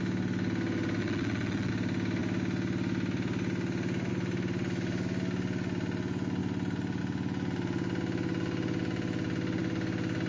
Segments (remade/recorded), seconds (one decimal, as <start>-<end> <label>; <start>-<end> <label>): 0.0-1.0 recorded; 1.0-1.7 remade; 1.7-10.3 recorded